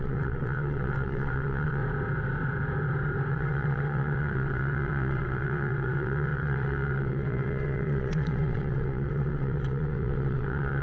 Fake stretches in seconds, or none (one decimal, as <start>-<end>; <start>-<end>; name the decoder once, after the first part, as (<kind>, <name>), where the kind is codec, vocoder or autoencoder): 0.0-1.8 (vocoder, WaveNeXt); 3.3-10.8

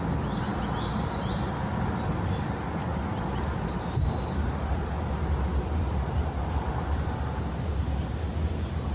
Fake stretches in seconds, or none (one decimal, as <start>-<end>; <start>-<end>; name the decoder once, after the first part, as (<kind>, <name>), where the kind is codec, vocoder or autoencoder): none

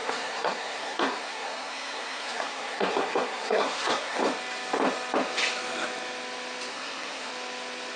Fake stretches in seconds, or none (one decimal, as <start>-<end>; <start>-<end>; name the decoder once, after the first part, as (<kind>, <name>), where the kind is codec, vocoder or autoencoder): 0.0-4.2 (codec, SNAC); 6.7-7.3

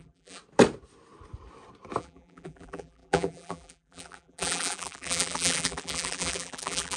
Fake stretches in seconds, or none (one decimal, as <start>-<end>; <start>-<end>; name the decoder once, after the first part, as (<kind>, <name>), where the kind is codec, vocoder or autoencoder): 0.0-0.4 (vocoder, BigVGAN v2); 2.0-7.0

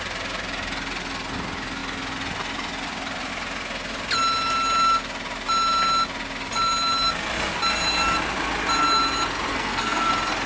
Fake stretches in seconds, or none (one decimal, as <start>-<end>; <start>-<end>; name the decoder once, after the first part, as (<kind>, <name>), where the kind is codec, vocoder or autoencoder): 9.5-10.1 (codec, SNAC)